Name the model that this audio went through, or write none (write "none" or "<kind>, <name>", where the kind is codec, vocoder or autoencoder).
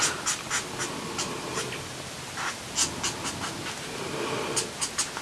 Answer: none